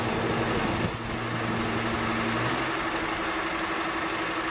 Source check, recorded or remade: recorded